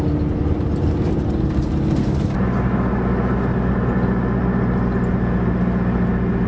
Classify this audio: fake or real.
real